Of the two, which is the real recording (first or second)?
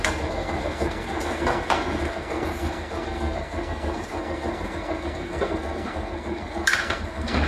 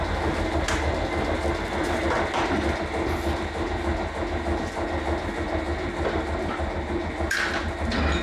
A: second